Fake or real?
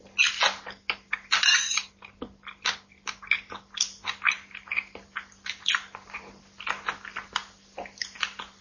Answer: real